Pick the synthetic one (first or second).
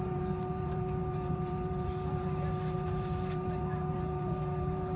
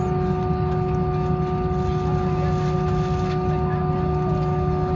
first